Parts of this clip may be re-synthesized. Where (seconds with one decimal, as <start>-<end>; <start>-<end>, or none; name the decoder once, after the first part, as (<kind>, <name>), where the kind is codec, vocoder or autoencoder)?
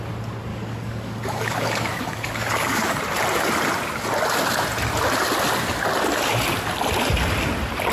0.5-3.0 (codec, DAC)